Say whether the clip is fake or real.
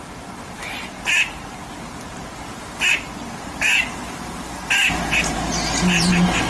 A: real